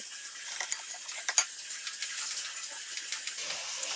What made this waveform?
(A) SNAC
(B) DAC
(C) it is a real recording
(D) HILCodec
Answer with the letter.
C